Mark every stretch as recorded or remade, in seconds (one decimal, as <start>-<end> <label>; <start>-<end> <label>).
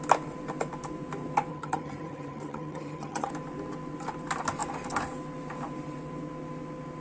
0.0-1.5 recorded; 1.5-3.3 remade; 3.3-7.0 recorded